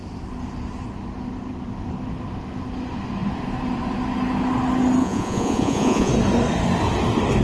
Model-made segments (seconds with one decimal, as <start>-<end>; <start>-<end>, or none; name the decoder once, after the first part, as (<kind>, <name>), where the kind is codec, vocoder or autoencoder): 5.0-6.1 (vocoder, Vocos)